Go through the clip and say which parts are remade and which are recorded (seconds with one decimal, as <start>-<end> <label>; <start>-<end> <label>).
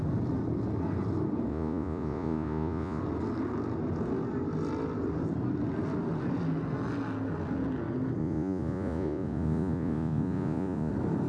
0.0-1.5 recorded; 1.5-3.0 remade; 3.0-8.2 recorded; 8.2-10.9 remade; 10.9-11.3 recorded